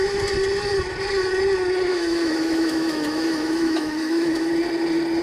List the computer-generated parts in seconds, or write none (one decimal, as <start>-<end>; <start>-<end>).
1.9-4.5

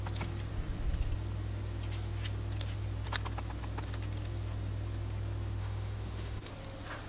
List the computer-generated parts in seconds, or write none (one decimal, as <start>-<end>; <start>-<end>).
5.6-6.5